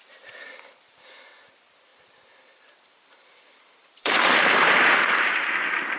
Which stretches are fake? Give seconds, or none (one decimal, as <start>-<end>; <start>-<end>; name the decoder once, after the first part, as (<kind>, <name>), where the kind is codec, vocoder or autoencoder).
1.9-5.5 (vocoder, BigVGAN v2)